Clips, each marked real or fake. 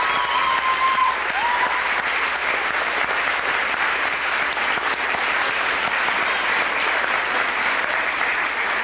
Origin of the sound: real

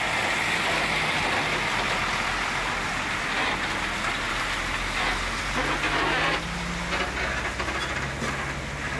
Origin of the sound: real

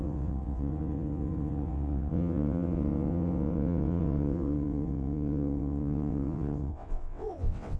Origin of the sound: fake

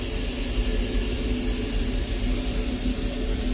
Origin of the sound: real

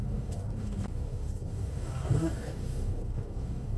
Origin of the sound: fake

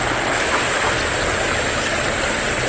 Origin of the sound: real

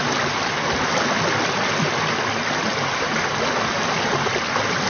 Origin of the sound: real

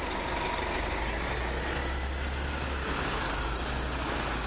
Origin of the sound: real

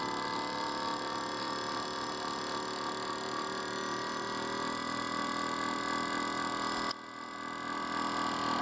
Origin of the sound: real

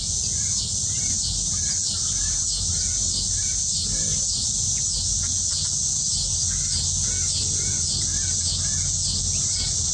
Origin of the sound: real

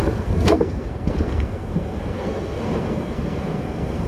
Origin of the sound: fake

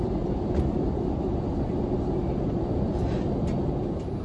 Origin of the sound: real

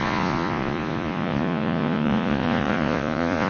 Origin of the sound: fake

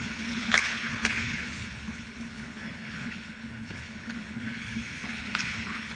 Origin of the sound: fake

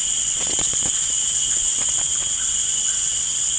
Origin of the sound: fake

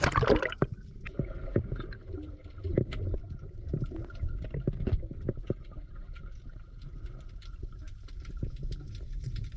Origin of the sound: real